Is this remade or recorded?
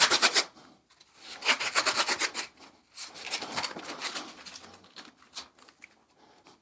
recorded